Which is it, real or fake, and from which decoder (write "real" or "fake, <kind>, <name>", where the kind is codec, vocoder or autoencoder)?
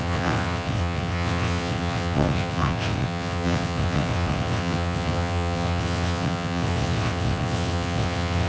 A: fake, vocoder, WaveNeXt